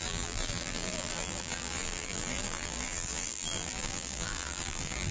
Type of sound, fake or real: fake